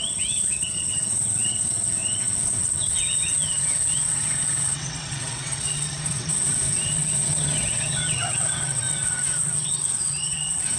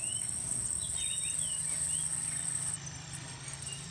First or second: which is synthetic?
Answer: first